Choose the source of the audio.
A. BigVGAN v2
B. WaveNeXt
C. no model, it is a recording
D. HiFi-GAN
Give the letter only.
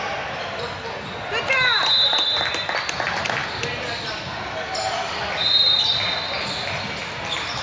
C